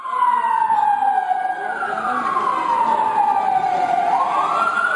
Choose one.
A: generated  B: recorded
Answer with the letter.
B